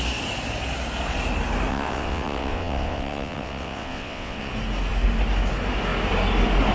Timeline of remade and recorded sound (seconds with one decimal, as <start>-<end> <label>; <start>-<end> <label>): 0.0-1.7 recorded; 1.7-4.5 remade; 4.5-6.7 recorded